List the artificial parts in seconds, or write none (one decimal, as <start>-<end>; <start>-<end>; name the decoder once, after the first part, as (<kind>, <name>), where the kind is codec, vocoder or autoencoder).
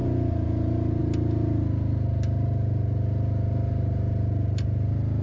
none